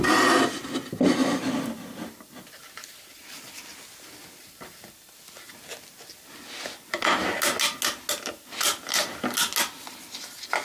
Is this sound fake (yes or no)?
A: no